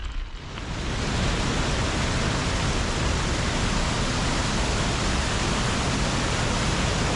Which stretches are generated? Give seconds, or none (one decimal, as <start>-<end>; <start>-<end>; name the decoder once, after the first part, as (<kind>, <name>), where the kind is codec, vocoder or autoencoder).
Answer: none